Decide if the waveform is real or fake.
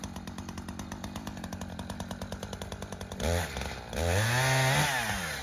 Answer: real